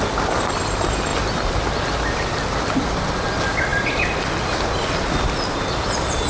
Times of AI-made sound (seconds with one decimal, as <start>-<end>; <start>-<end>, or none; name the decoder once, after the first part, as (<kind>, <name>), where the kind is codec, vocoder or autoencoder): none